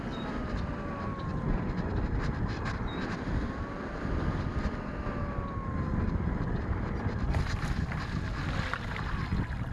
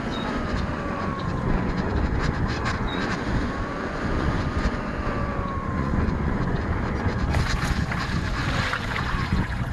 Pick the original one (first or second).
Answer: first